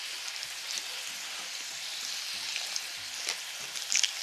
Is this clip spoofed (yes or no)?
no